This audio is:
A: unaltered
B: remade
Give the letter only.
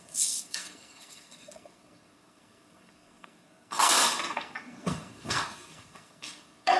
B